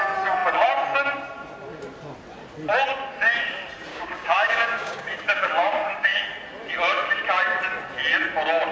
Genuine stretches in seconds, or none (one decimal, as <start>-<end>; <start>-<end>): 0.0-3.9; 6.2-8.7